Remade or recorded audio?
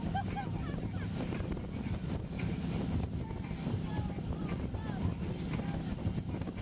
recorded